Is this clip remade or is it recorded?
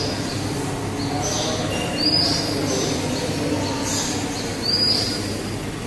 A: recorded